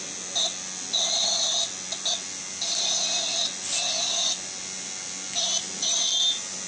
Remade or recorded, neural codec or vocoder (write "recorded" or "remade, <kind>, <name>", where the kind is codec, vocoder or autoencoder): recorded